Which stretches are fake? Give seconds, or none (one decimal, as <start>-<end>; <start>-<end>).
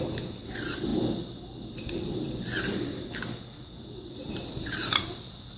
none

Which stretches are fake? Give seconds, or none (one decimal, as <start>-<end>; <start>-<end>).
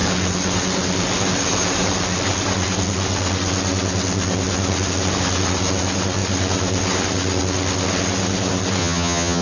8.8-9.4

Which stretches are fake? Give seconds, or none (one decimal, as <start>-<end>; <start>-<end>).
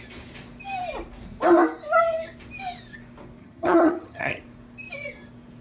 3.4-4.4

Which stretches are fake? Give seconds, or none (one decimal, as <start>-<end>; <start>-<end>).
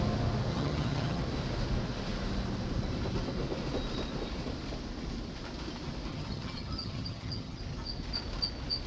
0.5-1.2; 6.1-7.6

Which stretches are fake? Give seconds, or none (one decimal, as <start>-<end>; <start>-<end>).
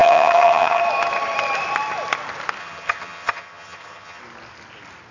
0.0-0.8; 2.6-4.2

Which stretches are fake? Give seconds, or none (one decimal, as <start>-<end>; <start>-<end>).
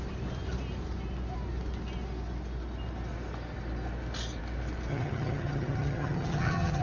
4.9-6.8